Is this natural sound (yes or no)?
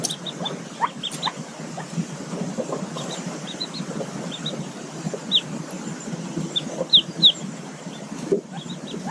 yes